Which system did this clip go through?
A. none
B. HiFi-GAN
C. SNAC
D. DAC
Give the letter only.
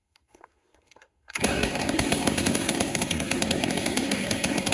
C